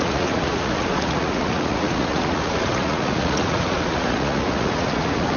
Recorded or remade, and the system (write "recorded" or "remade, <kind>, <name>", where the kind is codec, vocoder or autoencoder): remade, vocoder, Vocos